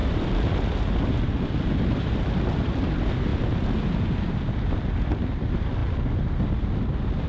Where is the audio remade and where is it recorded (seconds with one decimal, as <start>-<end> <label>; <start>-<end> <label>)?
0.0-2.9 remade; 2.9-7.3 recorded